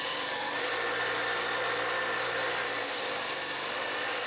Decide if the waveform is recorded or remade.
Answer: remade